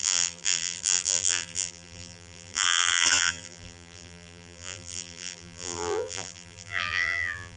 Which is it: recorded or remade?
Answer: remade